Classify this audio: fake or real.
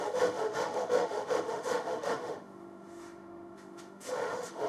fake